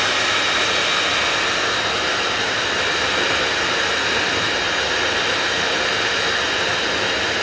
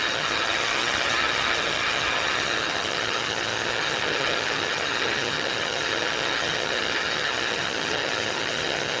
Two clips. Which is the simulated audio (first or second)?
second